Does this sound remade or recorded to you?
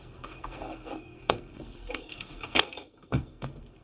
remade